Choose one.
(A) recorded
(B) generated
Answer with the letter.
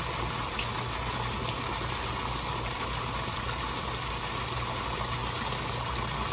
A